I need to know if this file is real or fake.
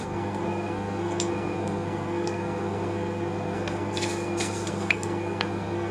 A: fake